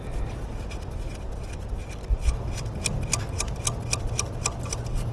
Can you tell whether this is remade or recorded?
recorded